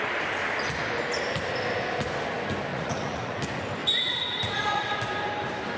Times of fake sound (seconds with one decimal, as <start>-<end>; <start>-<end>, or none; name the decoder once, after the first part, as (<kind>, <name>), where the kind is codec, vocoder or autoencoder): 2.7-3.4 (vocoder, Vocos); 3.8-5.0